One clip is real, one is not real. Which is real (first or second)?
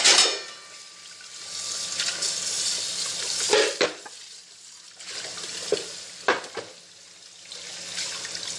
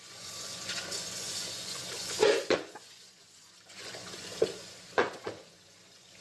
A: first